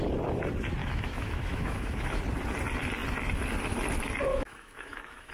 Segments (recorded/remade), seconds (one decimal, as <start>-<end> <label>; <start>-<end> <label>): 0.0-0.8 recorded; 0.8-2.2 remade; 2.2-4.3 recorded; 4.3-5.3 remade